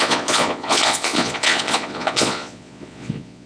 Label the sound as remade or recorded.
remade